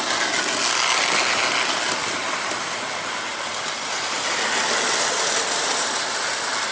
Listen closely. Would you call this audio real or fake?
real